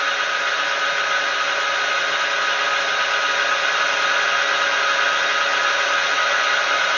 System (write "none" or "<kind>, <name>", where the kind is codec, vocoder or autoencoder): none